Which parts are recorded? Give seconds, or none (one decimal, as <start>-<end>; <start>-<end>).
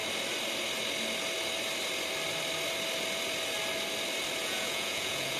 0.0-4.4